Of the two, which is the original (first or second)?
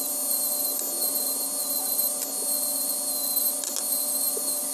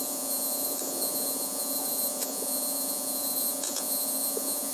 first